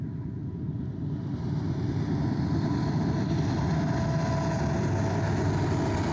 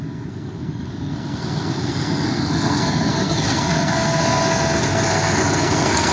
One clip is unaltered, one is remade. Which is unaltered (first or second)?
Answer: first